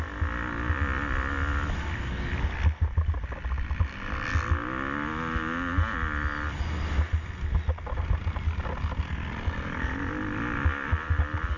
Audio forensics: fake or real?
real